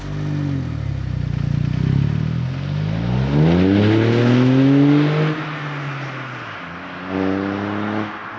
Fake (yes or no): no